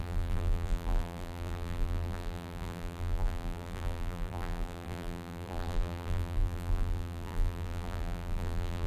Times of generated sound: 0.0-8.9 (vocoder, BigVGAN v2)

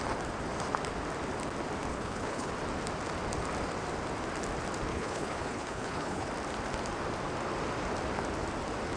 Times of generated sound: 1.9-2.5 (codec, HILCodec); 4.9-6.3

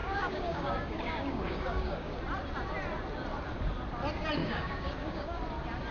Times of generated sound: 0.0-2.1 (codec, DAC); 4.4-5.4

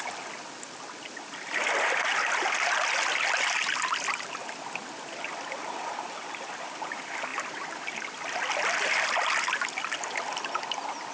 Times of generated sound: none

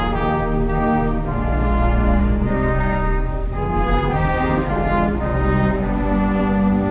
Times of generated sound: 2.2-4.7 (codec, SNAC)

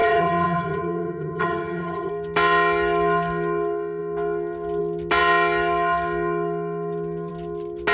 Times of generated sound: 0.0-2.1 (vocoder, HiFi-GAN)

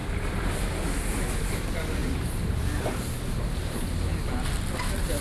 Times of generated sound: none

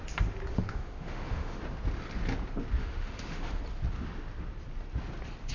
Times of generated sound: 0.5-1.6 (autoencoder, DAC-VAE); 2.8-3.6